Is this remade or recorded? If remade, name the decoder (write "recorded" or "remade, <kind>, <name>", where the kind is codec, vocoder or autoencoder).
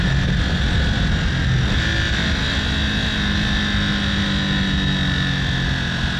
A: recorded